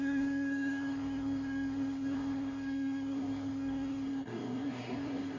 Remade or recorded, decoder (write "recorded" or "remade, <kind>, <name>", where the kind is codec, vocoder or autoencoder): remade, codec, SNAC